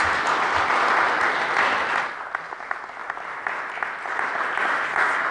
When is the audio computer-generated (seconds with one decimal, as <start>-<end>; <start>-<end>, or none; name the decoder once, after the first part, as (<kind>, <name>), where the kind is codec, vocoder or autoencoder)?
none